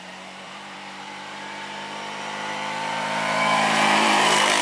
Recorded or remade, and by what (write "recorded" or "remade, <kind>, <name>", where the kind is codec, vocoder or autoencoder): remade, vocoder, BigVGAN v2